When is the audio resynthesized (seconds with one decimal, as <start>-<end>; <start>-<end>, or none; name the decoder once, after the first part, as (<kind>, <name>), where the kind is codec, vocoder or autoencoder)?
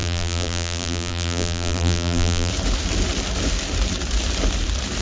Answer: 0.0-2.5 (vocoder, BigVGAN v2)